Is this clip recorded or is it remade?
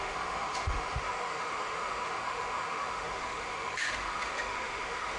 remade